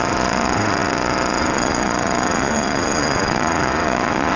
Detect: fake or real fake